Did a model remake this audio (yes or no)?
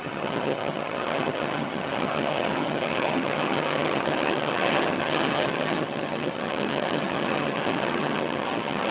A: yes